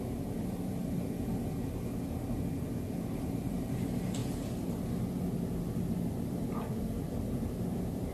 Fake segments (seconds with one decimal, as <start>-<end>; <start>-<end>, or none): 0.0-0.8; 3.1-4.2; 5.9-8.1